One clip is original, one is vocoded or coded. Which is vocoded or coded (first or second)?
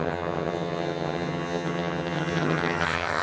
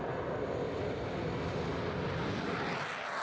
first